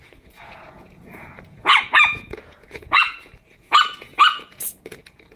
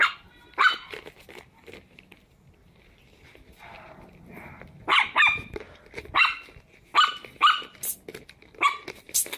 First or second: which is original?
second